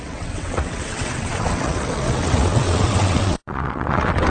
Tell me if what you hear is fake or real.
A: fake